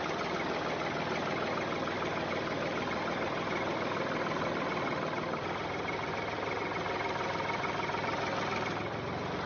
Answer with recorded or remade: recorded